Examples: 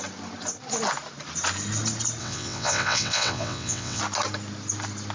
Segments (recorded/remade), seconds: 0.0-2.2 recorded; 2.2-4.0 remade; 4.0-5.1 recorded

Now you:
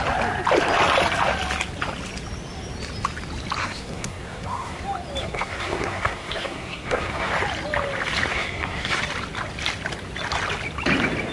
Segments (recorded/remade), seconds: 0.0-3.6 recorded; 3.6-4.8 remade; 4.8-5.2 recorded; 5.2-7.3 remade; 7.3-8.3 recorded; 8.3-9.0 remade; 9.0-11.3 recorded

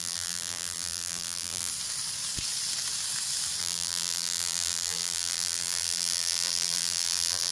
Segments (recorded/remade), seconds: 0.0-1.7 remade; 1.7-3.6 recorded; 3.6-7.5 remade

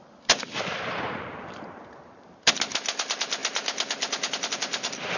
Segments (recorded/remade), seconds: 0.0-2.5 remade; 2.5-5.2 recorded

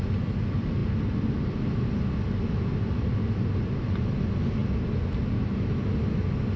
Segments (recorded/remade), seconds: 0.0-6.6 recorded